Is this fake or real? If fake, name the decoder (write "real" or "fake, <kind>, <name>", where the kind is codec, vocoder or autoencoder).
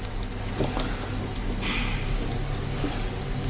real